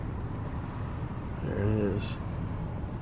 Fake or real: real